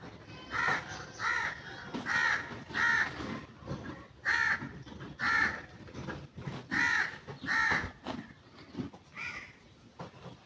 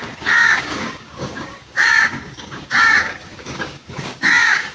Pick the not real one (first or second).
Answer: second